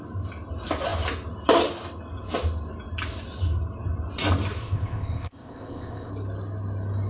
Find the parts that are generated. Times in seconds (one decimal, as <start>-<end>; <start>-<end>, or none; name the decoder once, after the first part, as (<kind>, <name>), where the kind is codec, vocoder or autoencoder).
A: 4.6-6.1 (codec, ZipCodec)